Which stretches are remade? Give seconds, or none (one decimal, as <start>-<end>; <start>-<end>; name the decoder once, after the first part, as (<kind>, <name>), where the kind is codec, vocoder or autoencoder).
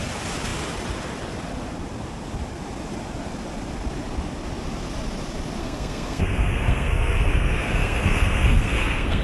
5.6-9.2 (codec, SNAC)